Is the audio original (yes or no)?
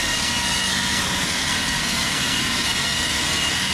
no